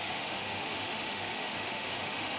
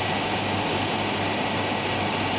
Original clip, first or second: second